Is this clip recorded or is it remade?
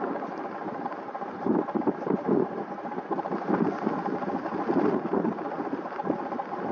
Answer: recorded